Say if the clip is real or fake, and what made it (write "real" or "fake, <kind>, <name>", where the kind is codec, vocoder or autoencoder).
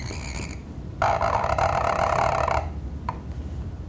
fake, vocoder, BigVGAN v2